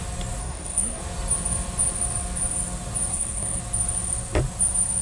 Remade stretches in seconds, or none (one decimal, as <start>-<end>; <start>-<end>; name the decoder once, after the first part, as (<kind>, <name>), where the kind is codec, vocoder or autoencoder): 0.4-1.0 (codec, SNAC); 3.1-3.6